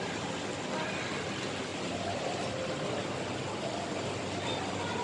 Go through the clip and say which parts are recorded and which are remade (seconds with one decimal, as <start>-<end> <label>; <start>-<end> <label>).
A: 0.0-5.0 recorded